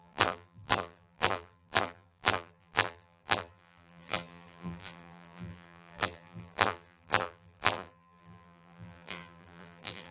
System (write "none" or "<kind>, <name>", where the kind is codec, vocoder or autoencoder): vocoder, BigVGAN v2